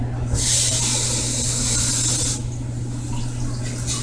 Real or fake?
real